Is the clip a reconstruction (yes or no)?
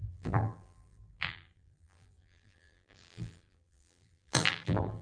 yes